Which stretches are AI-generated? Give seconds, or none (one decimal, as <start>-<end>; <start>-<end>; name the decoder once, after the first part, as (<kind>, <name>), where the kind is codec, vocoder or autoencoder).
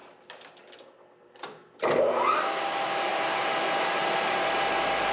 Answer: none